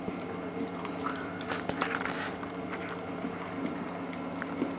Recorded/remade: recorded